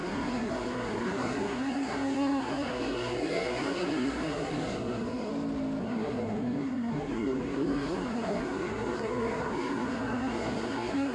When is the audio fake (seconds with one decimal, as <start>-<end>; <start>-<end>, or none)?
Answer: 0.0-5.3; 5.8-11.1

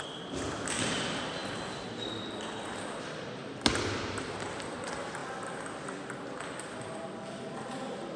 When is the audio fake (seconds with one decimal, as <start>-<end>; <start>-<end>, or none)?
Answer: none

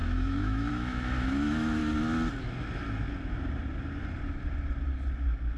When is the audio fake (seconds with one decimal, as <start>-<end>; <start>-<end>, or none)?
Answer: 0.0-1.8

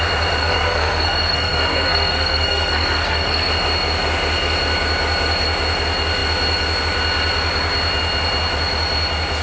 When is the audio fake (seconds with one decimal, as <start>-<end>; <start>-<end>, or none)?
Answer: 0.4-3.5

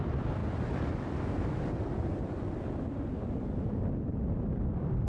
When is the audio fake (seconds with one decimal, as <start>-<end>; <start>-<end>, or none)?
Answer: none

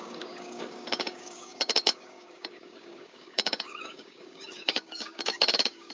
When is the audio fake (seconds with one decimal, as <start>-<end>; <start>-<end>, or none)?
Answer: 0.0-5.9